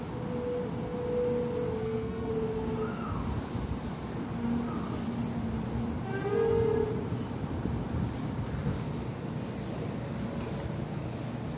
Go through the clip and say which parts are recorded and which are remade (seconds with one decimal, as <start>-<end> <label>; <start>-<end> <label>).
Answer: 0.0-1.8 recorded; 1.8-2.3 remade; 2.3-11.6 recorded